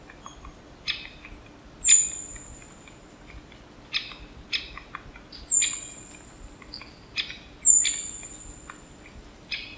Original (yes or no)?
yes